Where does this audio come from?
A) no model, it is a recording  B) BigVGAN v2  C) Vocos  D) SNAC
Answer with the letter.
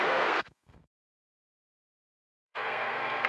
D